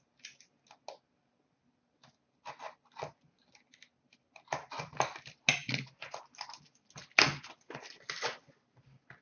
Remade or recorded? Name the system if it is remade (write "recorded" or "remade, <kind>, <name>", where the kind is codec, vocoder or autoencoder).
recorded